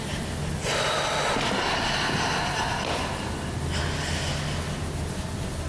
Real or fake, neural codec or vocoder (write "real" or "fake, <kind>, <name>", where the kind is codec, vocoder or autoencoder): real